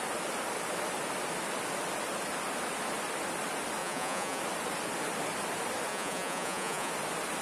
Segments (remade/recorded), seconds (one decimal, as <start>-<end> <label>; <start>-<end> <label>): 0.0-3.8 recorded; 3.8-4.4 remade; 4.4-5.9 recorded; 5.9-6.9 remade; 6.9-7.4 recorded